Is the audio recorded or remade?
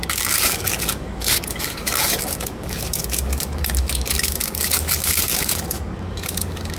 remade